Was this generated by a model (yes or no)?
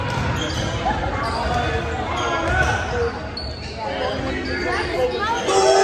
no